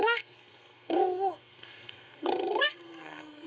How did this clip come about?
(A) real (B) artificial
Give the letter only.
B